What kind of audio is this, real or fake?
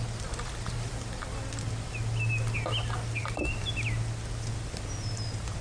real